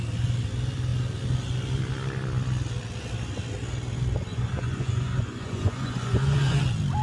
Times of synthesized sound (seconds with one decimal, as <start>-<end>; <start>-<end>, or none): 4.3-6.6